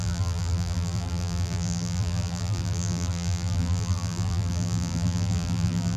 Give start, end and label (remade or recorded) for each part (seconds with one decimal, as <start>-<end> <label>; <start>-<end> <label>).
0.0-6.0 remade